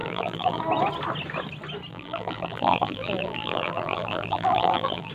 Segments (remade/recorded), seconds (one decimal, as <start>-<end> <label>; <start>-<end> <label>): 0.0-0.6 remade; 0.6-1.9 recorded; 1.9-5.1 remade